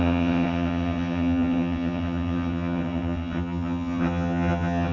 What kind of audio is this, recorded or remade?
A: remade